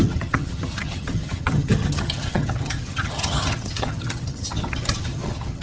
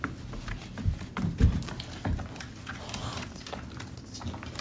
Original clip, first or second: second